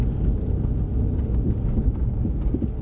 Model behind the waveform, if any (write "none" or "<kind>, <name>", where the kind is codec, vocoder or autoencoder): none